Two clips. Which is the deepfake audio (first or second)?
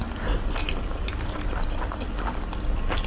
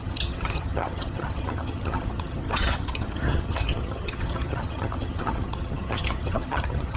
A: second